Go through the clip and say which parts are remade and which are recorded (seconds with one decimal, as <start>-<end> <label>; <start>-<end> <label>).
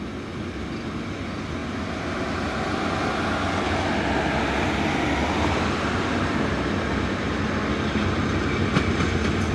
0.0-9.5 recorded